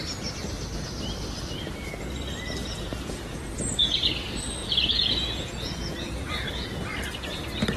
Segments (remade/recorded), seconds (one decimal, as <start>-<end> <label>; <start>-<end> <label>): 0.0-2.6 recorded; 2.6-4.1 remade; 4.1-4.6 recorded; 4.6-6.5 remade; 6.5-7.8 recorded